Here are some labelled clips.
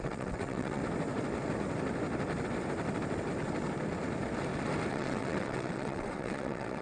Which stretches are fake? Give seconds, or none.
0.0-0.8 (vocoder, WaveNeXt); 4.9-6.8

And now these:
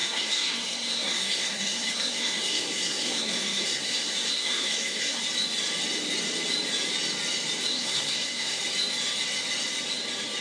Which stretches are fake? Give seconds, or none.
0.0-5.2 (codec, SNAC); 7.7-8.6